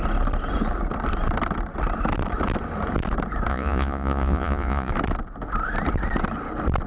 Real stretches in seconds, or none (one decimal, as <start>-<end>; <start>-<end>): 0.0-3.5; 4.9-6.9